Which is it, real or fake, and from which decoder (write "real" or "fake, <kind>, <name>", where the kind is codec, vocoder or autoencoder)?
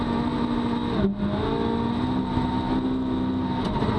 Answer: real